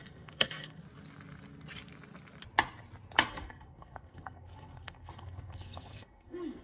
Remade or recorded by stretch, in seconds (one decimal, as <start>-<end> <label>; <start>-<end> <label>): 0.0-0.8 remade; 0.8-3.3 recorded; 3.3-6.6 remade